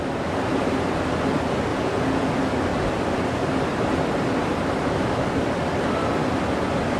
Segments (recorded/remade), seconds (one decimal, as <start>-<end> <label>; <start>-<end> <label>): 0.0-1.7 recorded; 1.7-2.3 remade; 2.3-7.0 recorded